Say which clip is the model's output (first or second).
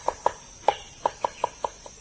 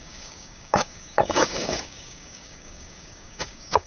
second